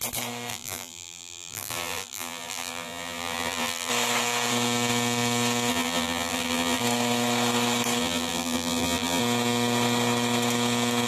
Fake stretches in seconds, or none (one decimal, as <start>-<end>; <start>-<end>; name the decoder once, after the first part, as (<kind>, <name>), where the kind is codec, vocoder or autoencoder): 0.5-3.9 (vocoder, BigVGAN v2); 5.7-6.8; 8.0-9.2